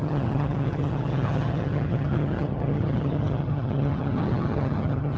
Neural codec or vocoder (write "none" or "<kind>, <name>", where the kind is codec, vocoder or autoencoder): vocoder, HiFi-GAN